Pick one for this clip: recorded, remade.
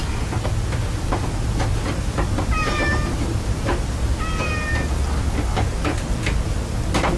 recorded